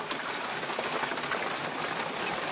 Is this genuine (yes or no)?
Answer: yes